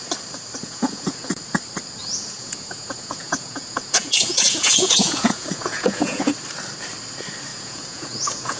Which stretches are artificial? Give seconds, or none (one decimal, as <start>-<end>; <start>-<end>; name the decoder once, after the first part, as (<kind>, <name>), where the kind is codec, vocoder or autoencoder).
0.6-1.4 (vocoder, Vocos); 2.0-6.3; 7.5-8.6